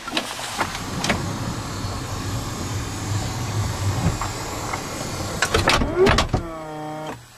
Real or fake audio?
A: real